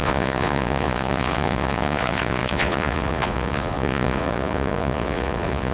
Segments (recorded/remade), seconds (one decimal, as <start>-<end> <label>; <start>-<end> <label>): 0.0-5.7 remade